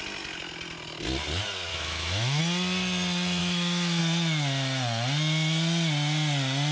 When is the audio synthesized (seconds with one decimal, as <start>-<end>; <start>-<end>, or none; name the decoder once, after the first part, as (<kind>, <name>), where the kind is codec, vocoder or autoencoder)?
1.7-2.4 (autoencoder, DAC-VAE); 3.4-4.0